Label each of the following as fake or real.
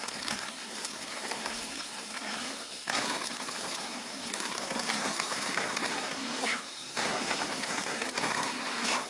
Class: fake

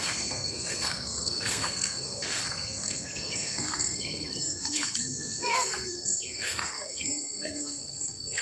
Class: fake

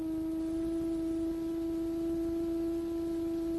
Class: real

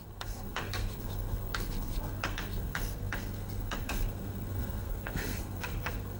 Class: fake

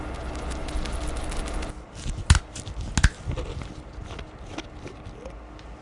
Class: real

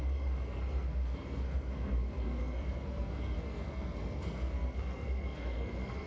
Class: fake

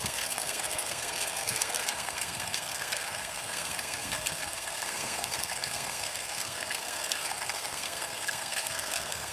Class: fake